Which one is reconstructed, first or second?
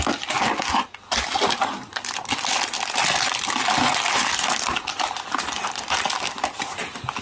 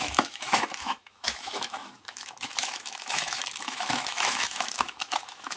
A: second